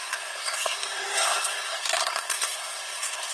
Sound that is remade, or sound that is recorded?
remade